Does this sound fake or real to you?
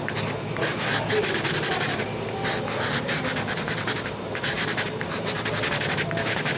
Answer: fake